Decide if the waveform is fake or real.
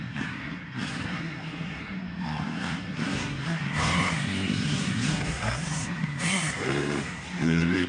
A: fake